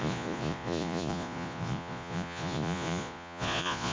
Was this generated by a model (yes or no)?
yes